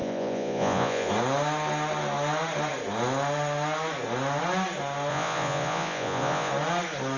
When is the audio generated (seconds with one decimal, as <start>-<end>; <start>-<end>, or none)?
0.0-1.1; 5.1-6.5